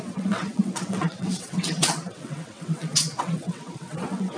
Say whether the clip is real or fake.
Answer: fake